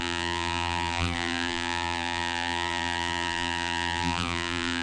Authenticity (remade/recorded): remade